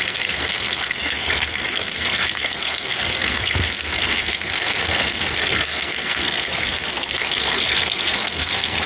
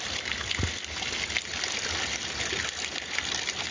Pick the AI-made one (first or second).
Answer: first